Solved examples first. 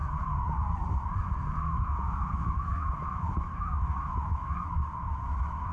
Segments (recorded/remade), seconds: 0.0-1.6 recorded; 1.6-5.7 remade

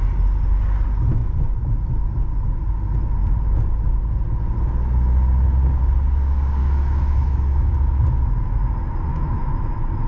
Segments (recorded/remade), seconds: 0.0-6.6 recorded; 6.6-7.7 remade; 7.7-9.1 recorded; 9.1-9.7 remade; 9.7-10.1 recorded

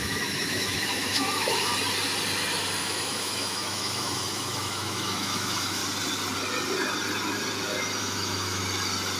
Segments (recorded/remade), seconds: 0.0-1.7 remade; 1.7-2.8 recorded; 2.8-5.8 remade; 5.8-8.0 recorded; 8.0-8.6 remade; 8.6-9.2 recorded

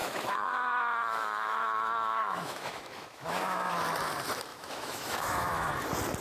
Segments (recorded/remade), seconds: 0.0-3.7 remade; 3.7-4.5 recorded; 4.5-5.7 remade; 5.7-6.2 recorded